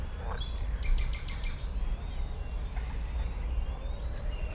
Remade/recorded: recorded